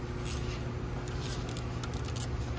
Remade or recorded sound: recorded